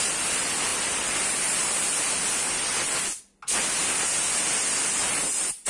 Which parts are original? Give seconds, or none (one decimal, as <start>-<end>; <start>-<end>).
0.0-5.7